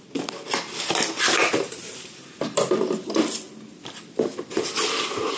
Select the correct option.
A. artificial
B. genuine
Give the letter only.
B